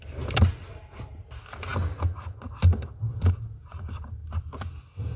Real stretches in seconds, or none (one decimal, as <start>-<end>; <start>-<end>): 0.0-5.2